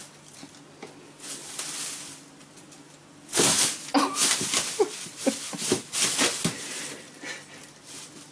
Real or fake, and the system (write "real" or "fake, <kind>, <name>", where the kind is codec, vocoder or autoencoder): real